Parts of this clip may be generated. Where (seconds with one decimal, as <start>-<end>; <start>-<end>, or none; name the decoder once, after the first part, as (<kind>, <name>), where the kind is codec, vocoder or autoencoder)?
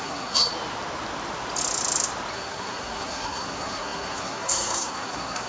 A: 0.0-0.5 (codec, SNAC); 2.3-5.5